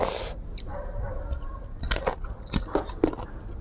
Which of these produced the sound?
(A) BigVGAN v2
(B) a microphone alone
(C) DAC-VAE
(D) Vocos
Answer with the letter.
B